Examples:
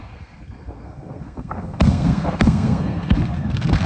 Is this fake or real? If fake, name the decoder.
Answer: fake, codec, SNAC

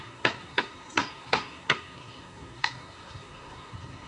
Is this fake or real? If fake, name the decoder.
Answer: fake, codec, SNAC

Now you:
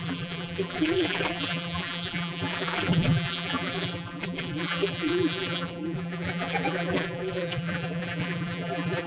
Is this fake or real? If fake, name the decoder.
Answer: fake, vocoder, BigVGAN v2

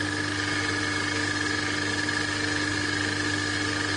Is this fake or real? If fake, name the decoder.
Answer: real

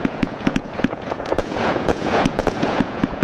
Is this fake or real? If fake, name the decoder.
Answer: fake, vocoder, Vocos